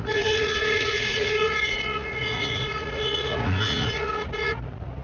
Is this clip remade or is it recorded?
remade